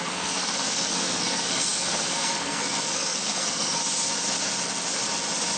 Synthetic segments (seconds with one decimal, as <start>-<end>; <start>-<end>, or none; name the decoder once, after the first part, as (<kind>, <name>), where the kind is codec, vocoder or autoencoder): 0.0-3.8 (codec, SNAC)